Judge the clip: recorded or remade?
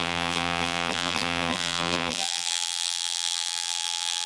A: remade